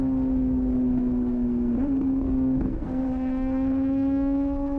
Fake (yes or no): yes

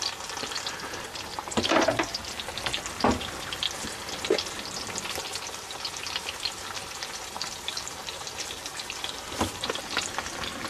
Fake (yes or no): no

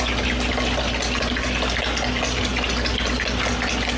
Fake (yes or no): no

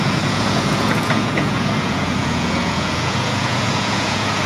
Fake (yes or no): yes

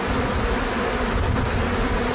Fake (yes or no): no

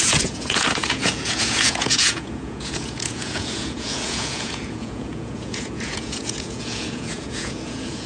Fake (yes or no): yes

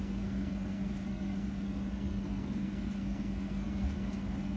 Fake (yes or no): yes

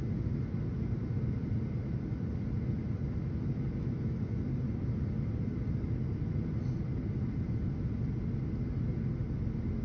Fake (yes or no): no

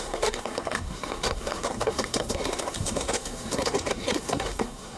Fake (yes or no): yes